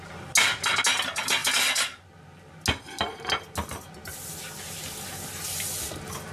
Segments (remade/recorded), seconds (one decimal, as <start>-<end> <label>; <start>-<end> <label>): 0.0-6.3 recorded